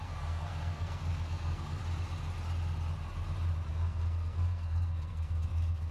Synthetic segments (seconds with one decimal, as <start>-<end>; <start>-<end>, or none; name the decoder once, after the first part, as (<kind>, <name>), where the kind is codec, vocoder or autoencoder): 0.0-1.8 (codec, SNAC); 3.7-5.9